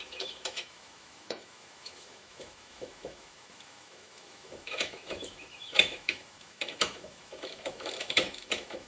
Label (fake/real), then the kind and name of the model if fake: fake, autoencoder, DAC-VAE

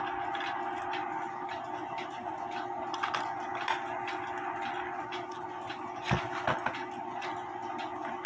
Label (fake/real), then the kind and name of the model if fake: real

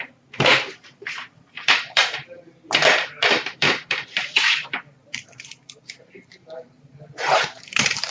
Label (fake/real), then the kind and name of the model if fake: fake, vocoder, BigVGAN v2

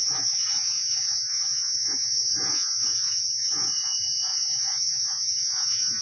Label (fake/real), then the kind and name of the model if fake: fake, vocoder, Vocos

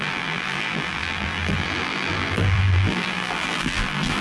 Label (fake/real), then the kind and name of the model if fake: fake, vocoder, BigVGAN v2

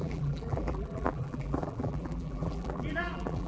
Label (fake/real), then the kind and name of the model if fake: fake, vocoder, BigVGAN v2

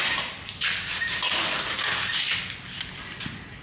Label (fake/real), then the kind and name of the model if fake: real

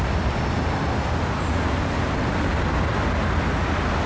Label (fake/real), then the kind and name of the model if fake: real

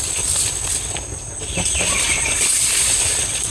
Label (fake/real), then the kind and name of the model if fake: real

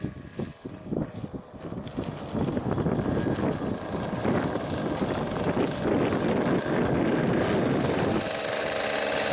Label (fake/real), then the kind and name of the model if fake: real